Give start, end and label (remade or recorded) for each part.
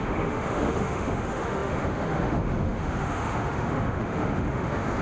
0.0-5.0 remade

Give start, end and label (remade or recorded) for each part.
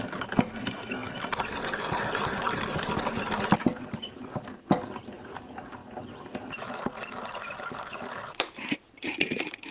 0.0-9.7 recorded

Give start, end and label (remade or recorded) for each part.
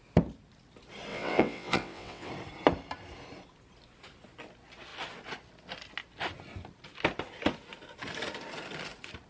0.0-1.1 recorded; 1.1-2.3 remade; 2.3-9.3 recorded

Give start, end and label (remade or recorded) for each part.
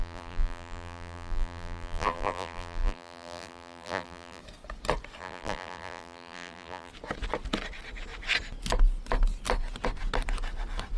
0.0-4.4 remade; 4.4-5.2 recorded; 5.2-6.9 remade; 6.9-11.0 recorded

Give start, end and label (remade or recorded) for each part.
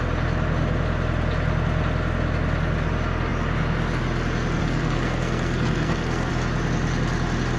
0.0-4.6 recorded; 4.6-6.3 remade; 6.3-7.6 recorded